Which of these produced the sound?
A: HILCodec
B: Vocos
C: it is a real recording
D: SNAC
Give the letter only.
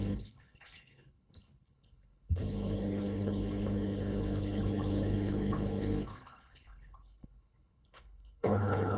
A